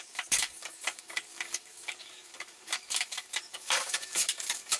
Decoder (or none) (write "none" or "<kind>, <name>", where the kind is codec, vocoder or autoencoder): codec, DAC